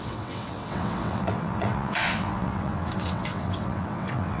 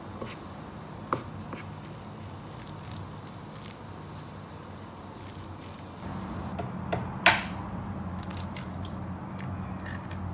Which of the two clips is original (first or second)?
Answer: second